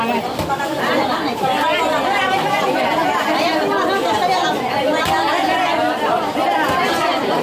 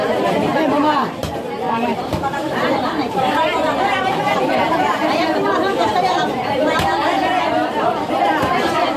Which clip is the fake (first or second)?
second